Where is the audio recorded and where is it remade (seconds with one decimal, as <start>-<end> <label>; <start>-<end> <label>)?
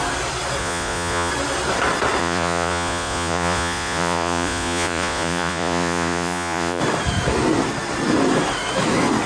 0.0-0.6 recorded; 0.6-1.3 remade; 1.3-2.2 recorded; 2.2-6.8 remade; 6.8-9.3 recorded